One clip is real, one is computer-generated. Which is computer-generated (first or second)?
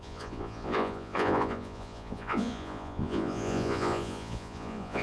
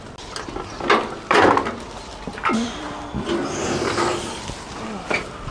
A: first